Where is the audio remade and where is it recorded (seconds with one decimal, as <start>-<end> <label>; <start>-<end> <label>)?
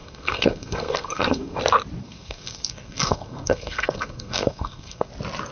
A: 0.0-1.6 remade; 1.6-2.0 recorded; 2.0-5.1 remade; 5.1-5.5 recorded